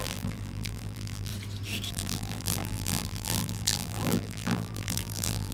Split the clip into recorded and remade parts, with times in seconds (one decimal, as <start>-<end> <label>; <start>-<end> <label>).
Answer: 0.0-1.3 remade; 1.3-1.9 recorded; 1.9-5.5 remade

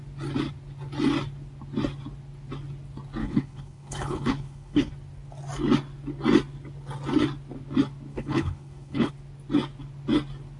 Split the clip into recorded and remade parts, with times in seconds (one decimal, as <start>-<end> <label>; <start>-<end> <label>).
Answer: 0.0-3.2 recorded; 3.2-4.9 remade; 4.9-8.1 recorded; 8.1-9.1 remade; 9.1-10.6 recorded

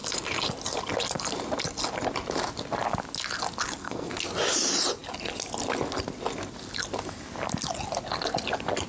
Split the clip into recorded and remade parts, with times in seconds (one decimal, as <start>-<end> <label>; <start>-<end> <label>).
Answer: 0.0-3.8 recorded; 3.8-4.3 remade; 4.3-8.9 recorded

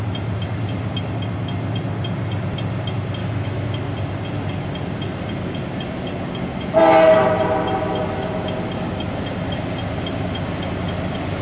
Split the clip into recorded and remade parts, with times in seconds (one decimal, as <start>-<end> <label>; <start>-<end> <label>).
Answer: 0.0-3.2 recorded; 3.2-3.8 remade; 3.8-11.4 recorded

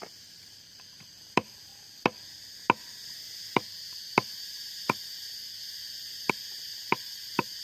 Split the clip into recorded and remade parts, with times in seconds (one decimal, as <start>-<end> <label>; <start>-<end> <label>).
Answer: 0.0-1.7 remade; 1.7-6.3 recorded; 6.3-7.6 remade

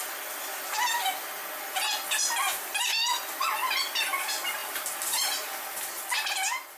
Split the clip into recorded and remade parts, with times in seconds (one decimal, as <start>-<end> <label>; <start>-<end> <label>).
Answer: 0.0-4.6 recorded; 4.6-5.8 remade; 5.8-6.8 recorded

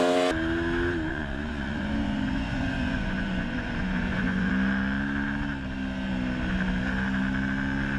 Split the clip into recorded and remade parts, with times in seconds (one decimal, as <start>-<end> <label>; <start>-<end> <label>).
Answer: 0.0-1.1 recorded; 1.1-4.5 remade; 4.5-8.0 recorded